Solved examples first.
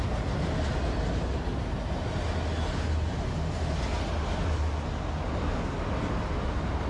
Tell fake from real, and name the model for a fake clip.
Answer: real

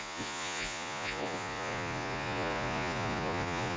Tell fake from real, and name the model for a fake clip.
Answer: fake, vocoder, Vocos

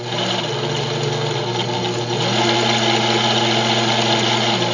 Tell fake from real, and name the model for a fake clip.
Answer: real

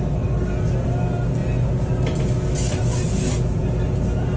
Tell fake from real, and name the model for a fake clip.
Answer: real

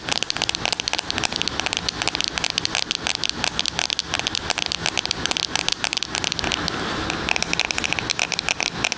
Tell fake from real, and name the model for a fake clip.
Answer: real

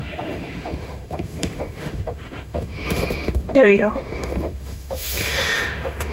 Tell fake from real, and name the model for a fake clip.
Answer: fake, autoencoder, DAC-VAE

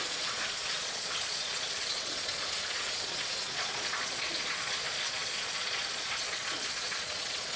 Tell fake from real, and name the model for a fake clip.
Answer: fake, vocoder, Vocos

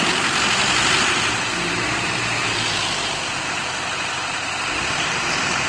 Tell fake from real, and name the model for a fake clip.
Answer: fake, vocoder, BigVGAN v2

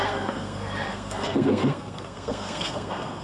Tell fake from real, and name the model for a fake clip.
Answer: fake, codec, SNAC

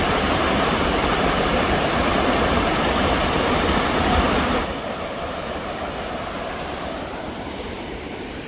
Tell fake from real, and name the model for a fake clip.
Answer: fake, vocoder, BigVGAN v2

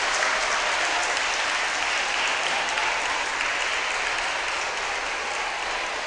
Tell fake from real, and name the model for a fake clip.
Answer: real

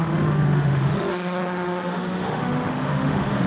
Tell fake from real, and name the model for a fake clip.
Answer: fake, autoencoder, DAC-VAE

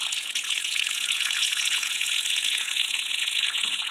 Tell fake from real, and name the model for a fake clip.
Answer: fake, vocoder, Vocos